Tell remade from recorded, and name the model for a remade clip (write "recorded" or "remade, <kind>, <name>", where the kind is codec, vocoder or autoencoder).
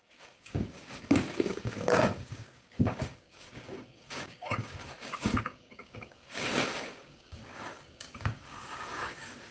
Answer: remade, codec, DAC